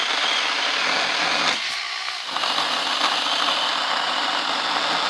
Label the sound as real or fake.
real